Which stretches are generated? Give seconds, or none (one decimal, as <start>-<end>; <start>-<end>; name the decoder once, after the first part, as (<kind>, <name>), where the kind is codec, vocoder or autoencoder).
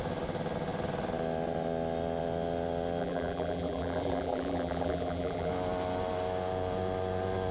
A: 3.0-5.5 (vocoder, BigVGAN v2)